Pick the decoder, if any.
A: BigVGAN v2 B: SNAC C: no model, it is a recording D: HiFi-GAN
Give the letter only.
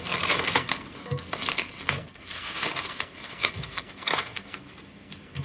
B